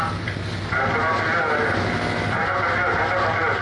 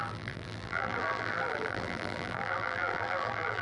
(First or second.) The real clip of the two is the first